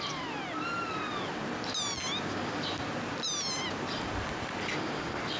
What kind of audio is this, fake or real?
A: real